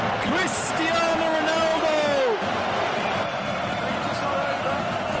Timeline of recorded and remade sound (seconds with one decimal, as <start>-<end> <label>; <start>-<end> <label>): 0.0-5.2 recorded